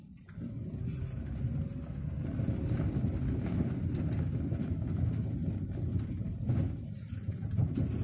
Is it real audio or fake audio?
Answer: real